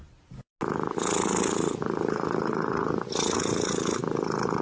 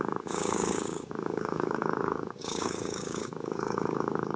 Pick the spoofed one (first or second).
second